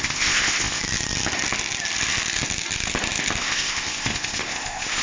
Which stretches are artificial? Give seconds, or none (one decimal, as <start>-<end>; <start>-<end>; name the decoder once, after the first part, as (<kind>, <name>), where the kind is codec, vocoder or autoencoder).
0.0-0.8 (codec, ZipCodec); 3.4-5.0